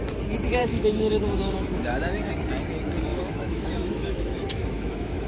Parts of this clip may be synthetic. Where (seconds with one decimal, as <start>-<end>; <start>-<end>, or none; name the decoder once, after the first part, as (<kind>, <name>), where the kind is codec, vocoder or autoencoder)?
0.6-2.3 (autoencoder, DAC-VAE); 3.1-5.3